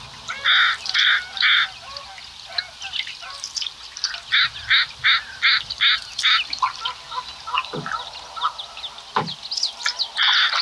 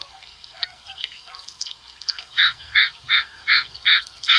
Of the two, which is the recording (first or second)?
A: first